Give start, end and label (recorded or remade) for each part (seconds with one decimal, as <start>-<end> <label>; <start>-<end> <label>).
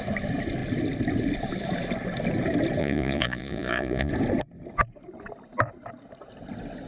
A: 0.0-2.8 recorded; 2.8-4.1 remade; 4.1-6.9 recorded